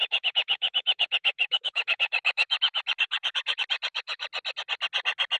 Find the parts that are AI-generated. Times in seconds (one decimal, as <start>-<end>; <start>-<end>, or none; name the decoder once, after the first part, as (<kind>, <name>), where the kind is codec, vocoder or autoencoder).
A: 0.0-4.2 (autoencoder, DAC-VAE)